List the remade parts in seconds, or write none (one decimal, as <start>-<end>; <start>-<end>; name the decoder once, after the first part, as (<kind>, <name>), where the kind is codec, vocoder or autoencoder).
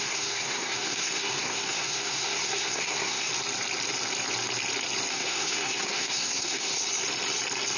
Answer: 0.0-3.3 (codec, SNAC); 5.1-6.8